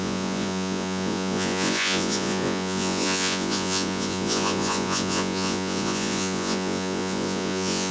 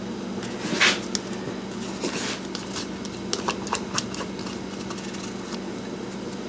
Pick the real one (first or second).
second